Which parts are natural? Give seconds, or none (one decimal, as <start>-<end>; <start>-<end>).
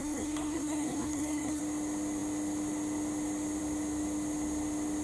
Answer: 1.6-5.0